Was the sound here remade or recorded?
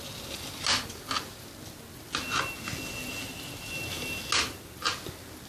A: recorded